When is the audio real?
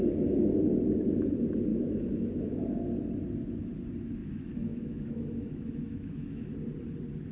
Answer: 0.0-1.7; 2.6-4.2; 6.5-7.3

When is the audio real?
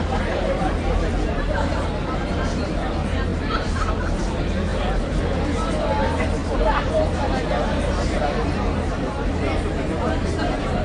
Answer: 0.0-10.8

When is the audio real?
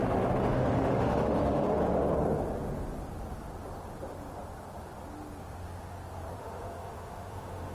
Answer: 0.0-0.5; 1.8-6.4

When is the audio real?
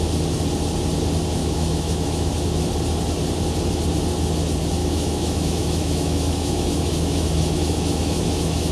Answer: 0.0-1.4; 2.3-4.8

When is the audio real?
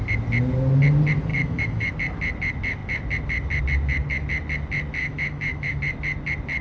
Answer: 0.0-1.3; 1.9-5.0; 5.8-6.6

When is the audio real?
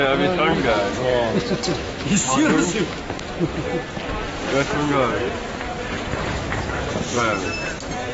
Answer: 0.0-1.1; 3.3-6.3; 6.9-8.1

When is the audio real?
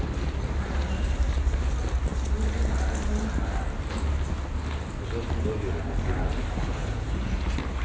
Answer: 0.0-7.8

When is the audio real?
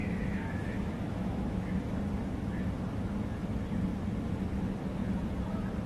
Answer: 2.0-5.9